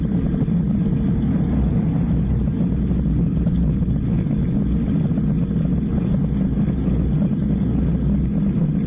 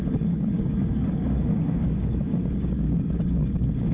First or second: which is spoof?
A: second